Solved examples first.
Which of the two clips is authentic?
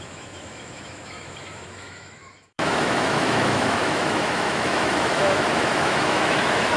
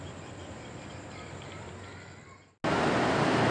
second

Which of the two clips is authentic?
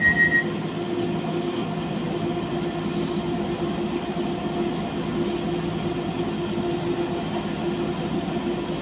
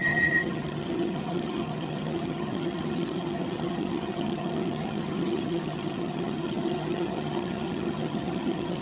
first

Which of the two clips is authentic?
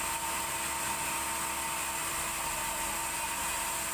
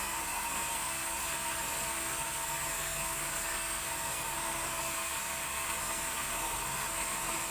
first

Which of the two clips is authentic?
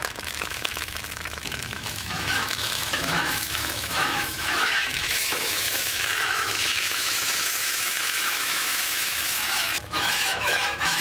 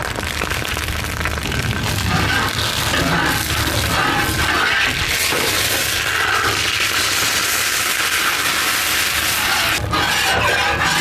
second